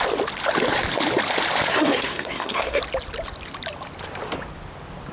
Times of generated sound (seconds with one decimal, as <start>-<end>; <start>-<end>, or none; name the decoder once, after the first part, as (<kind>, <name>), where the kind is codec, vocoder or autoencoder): 1.7-2.8 (codec, SNAC)